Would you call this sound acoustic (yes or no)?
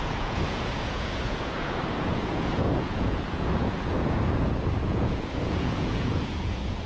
no